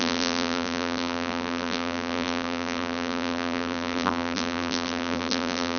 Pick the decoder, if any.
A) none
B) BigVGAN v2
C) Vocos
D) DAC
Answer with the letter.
B